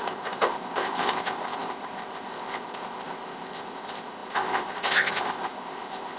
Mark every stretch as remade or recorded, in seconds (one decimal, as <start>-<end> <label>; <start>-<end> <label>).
0.0-6.2 remade